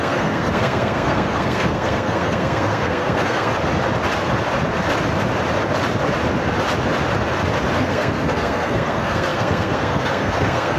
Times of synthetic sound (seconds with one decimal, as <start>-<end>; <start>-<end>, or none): 0.0-3.5; 7.8-10.8